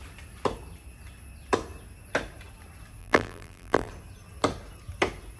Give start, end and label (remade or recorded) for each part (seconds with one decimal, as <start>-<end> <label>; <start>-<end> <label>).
0.0-3.0 recorded; 3.0-3.9 remade; 3.9-5.4 recorded